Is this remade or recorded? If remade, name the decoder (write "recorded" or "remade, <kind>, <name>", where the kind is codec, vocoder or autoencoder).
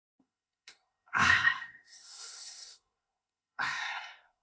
remade, codec, SNAC